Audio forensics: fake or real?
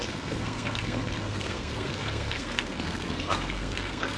fake